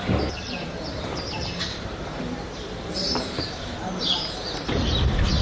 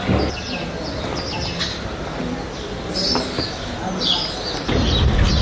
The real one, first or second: second